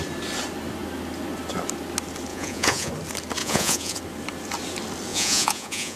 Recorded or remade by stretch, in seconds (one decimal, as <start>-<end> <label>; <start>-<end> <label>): 0.0-2.3 recorded; 2.3-2.9 remade; 2.9-3.4 recorded; 3.4-4.0 remade; 4.0-5.1 recorded; 5.1-6.0 remade